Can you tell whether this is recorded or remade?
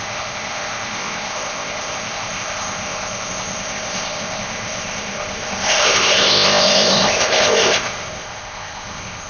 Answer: remade